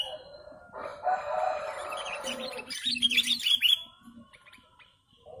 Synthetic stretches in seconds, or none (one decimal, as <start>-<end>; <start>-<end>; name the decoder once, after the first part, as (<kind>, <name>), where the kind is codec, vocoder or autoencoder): 0.9-3.6 (vocoder, BigVGAN v2)